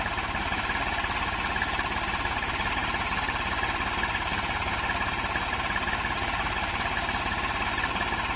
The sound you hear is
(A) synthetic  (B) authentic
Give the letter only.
B